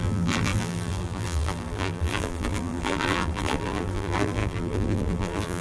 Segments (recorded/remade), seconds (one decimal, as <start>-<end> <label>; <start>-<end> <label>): 0.0-5.6 remade

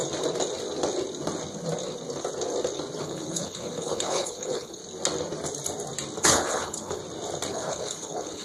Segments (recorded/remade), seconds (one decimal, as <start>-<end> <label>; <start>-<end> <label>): 0.0-3.0 recorded; 3.0-4.8 remade; 4.8-6.2 recorded; 6.2-7.0 remade; 7.0-7.5 recorded; 7.5-8.4 remade

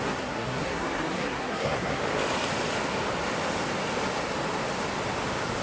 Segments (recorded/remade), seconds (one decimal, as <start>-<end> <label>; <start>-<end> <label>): 0.0-2.0 remade; 2.0-5.6 recorded

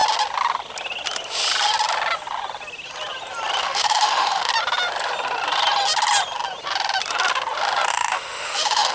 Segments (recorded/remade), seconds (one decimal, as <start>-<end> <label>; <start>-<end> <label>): 0.0-3.6 recorded; 3.6-4.5 remade; 4.5-7.9 recorded; 7.9-8.9 remade